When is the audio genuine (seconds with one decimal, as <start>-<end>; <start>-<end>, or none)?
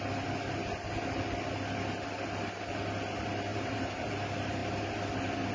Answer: 0.0-3.5; 4.1-5.5